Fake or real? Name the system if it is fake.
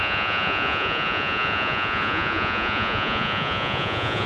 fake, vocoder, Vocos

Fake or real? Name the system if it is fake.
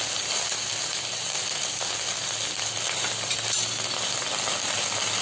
real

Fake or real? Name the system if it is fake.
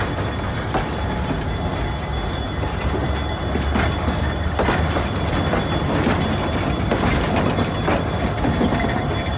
real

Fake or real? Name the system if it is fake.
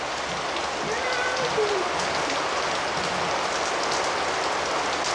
real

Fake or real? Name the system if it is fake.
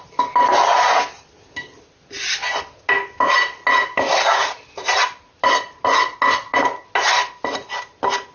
real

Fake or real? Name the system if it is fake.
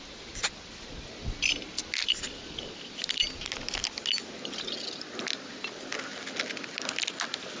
real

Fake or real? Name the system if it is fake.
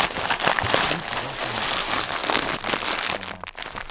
real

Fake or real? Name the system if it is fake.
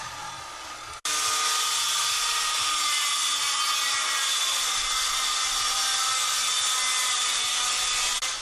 real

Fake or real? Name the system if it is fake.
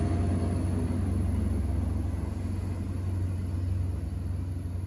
real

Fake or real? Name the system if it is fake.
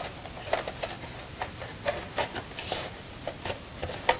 real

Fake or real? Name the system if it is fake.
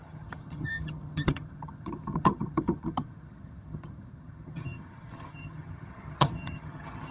fake, vocoder, HiFi-GAN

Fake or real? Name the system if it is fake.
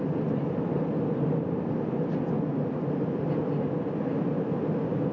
real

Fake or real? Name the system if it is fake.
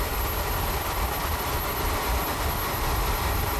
real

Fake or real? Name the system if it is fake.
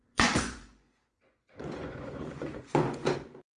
fake, vocoder, Vocos